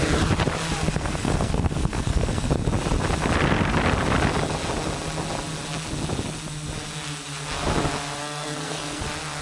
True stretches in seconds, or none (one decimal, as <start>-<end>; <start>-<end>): 0.0-0.9; 2.6-8.2; 9.0-9.4